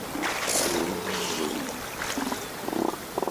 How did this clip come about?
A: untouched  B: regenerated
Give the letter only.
A